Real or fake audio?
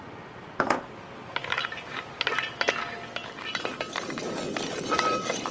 real